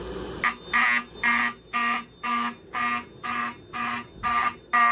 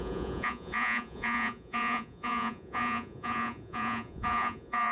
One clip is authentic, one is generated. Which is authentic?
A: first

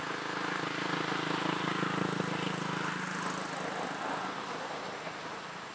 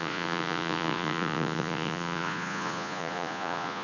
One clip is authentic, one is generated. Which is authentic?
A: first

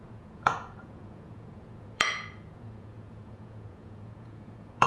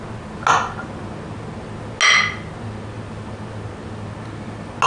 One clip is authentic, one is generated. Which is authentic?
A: second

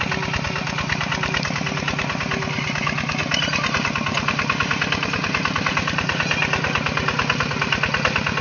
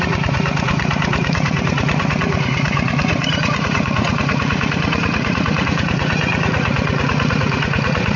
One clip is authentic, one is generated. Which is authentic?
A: first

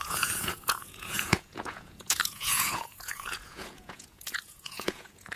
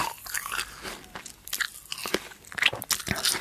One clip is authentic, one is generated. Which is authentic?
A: second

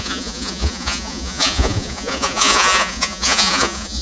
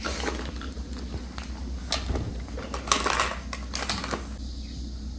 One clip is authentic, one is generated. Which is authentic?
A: second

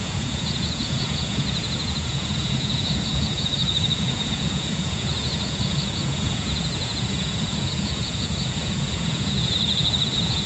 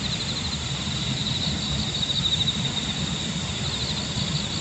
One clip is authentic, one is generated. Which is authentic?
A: second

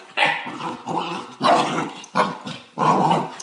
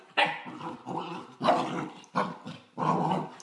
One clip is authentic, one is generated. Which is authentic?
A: second